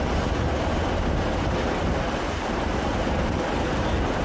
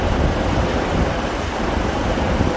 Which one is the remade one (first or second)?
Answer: second